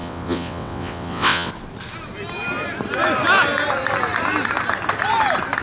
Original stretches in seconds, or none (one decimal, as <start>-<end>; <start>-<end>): 1.5-5.6